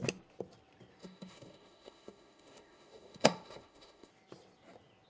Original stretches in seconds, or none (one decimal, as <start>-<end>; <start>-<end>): 0.0-1.0; 4.1-5.1